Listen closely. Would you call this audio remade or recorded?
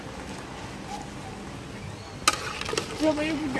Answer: recorded